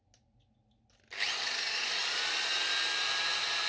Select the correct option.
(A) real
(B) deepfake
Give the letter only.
A